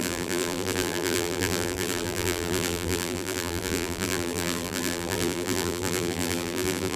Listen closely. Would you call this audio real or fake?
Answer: fake